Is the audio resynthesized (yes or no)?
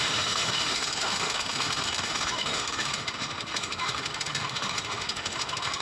yes